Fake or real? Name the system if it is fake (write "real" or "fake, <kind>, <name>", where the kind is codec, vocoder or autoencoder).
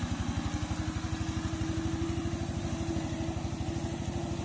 real